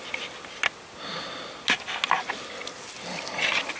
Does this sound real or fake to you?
real